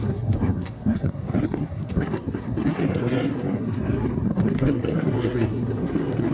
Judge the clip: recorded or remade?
remade